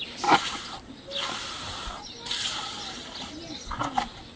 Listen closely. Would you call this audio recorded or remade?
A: recorded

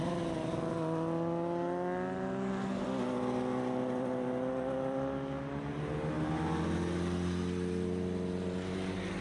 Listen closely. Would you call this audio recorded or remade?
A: recorded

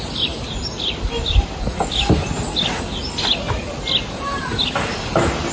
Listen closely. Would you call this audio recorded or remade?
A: recorded